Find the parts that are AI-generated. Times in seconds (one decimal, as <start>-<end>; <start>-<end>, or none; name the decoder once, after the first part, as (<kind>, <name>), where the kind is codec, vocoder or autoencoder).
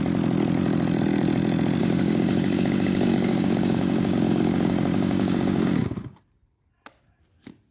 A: 1.8-6.2 (codec, DAC)